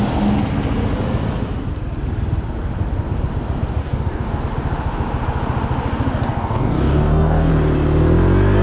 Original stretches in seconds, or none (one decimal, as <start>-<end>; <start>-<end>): 0.0-3.8; 4.4-6.3; 7.5-8.6